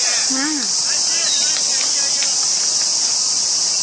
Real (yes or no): yes